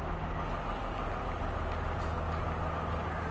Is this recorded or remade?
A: recorded